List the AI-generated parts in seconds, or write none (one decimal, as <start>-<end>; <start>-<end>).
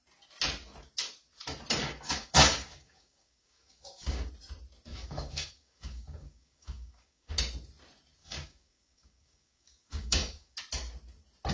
1.8-4.3; 4.9-7.3; 8.2-10.6